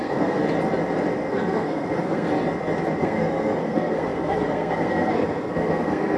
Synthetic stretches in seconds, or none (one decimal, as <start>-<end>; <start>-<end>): 0.0-0.4; 1.3-2.3; 3.0-6.2